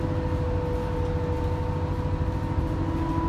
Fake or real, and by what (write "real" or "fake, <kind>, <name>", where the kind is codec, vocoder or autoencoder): real